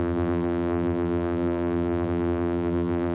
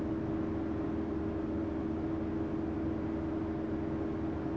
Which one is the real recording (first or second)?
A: second